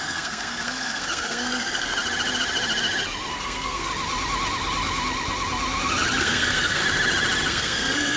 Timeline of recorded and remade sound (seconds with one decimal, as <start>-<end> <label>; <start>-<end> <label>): 0.0-1.9 remade; 1.9-3.3 recorded; 3.3-3.9 remade; 3.9-6.2 recorded; 6.2-6.8 remade; 6.8-7.5 recorded; 7.5-8.2 remade